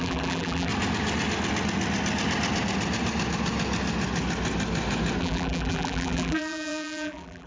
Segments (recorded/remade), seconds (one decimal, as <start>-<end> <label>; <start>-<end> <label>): 0.0-0.7 remade; 0.7-5.2 recorded; 5.2-7.5 remade